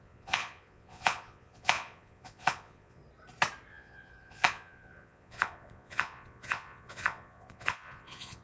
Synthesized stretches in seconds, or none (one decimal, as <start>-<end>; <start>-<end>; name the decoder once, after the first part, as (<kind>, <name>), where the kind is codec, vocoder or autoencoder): 0.0-3.0 (vocoder, Vocos); 3.7-8.4